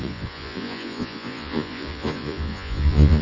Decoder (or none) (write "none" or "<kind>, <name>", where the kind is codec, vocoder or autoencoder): vocoder, Vocos